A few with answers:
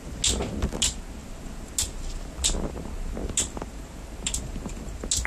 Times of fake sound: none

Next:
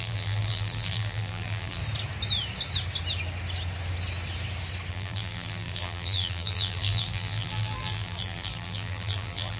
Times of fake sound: 0.0-1.8; 4.9-9.6

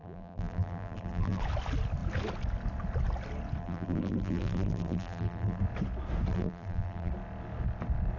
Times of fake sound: 0.0-1.4; 3.6-5.6; 6.3-7.1